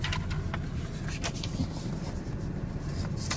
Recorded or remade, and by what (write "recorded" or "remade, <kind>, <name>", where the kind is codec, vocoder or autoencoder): recorded